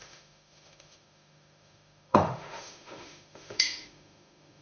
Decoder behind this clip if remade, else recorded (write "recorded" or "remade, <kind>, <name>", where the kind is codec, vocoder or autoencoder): remade, autoencoder, DAC-VAE